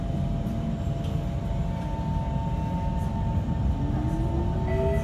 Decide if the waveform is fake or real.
real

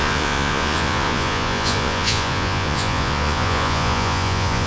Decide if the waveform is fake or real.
fake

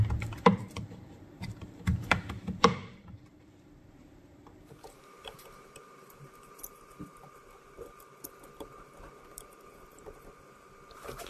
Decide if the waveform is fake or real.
fake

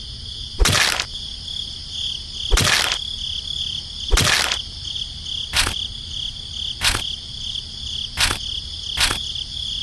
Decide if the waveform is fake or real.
real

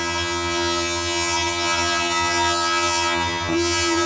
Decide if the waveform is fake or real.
fake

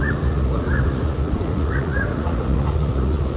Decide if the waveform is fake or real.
fake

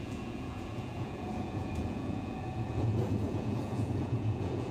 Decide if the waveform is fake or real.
fake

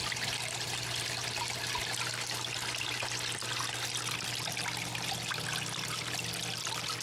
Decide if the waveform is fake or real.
real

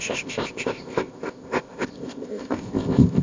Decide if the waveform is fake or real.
fake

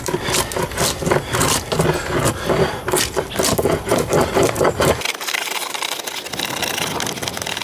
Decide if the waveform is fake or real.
real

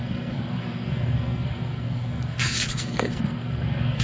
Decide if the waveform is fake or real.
fake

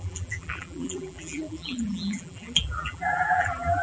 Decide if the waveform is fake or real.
fake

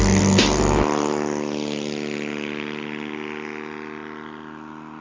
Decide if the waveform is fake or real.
real